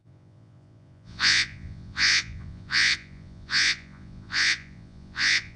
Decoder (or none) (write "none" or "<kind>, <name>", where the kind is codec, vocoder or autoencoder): vocoder, Vocos